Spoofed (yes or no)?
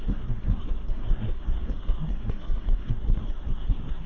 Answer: yes